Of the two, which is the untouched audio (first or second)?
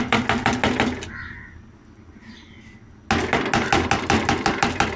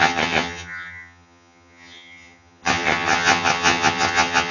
first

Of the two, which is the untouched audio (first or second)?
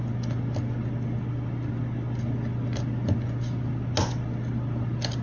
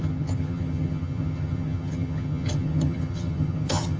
first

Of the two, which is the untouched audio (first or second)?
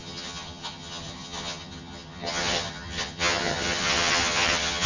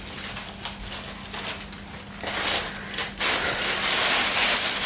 second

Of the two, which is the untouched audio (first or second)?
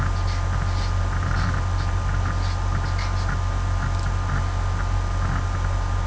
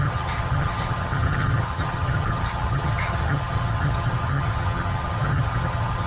first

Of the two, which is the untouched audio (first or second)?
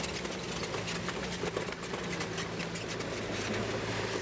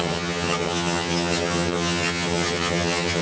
first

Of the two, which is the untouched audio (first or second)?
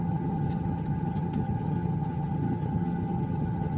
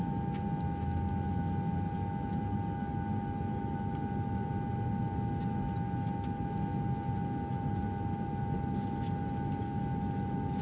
second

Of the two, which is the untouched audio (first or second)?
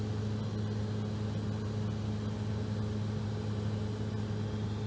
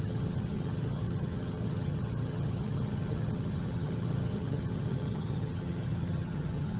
first